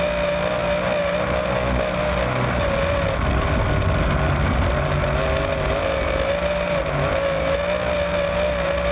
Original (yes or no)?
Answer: yes